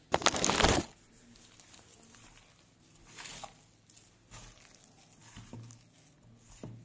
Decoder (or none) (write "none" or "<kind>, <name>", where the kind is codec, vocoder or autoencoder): none